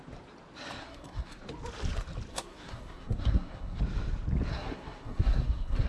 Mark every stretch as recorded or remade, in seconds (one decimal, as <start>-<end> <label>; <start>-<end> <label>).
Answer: 0.0-0.8 recorded; 0.8-1.4 remade; 1.4-2.3 recorded; 2.3-3.8 remade; 3.8-4.5 recorded; 4.5-5.9 remade